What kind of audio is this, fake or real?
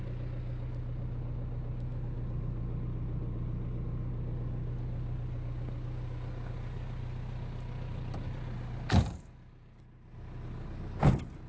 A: real